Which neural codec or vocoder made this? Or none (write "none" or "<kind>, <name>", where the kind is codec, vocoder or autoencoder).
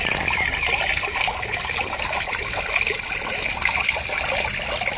none